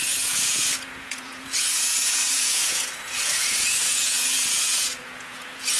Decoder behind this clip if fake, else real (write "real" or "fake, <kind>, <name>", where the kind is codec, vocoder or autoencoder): fake, vocoder, Vocos